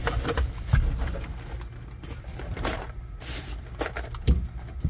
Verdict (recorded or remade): recorded